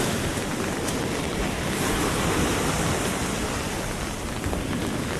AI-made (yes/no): no